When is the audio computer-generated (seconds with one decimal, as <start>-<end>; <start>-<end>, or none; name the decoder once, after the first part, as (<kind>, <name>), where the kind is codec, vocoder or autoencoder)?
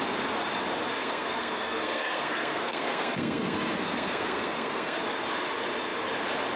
1.0-5.0 (codec, SNAC)